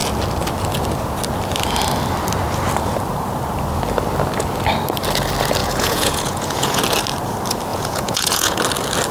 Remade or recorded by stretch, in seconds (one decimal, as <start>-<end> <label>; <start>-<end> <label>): 0.0-5.6 recorded; 5.6-6.8 remade; 6.8-7.7 recorded; 7.7-8.6 remade; 8.6-9.1 recorded